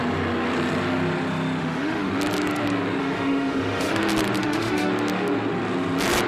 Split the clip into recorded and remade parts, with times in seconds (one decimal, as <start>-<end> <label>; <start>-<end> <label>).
0.0-1.6 recorded; 1.6-2.1 remade; 2.1-3.0 recorded; 3.0-4.0 remade; 4.0-4.4 recorded; 4.4-4.9 remade; 4.9-6.3 recorded